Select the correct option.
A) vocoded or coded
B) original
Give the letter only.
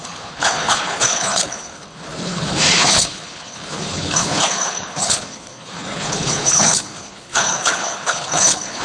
A